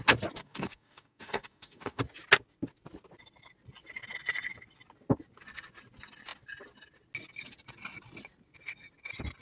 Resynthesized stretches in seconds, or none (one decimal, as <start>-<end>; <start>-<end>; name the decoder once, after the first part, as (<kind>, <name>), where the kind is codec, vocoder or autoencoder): 0.4-2.0 (codec, DAC)